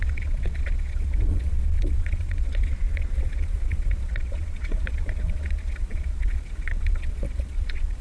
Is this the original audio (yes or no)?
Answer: no